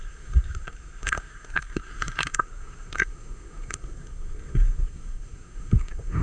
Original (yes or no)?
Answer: no